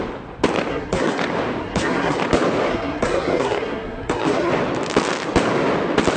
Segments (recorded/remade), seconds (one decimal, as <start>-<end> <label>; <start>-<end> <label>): 0.0-0.7 recorded; 0.7-1.2 remade; 1.2-1.6 recorded; 1.6-2.2 remade; 2.2-2.7 recorded; 2.7-4.5 remade; 4.5-6.2 recorded